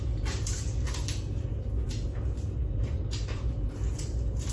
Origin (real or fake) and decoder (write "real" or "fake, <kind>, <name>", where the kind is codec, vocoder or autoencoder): fake, vocoder, BigVGAN v2